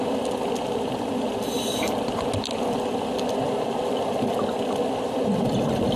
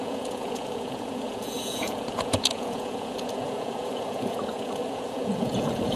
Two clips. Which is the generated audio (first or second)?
second